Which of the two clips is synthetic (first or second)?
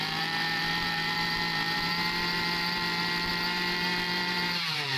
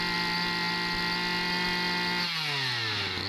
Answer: first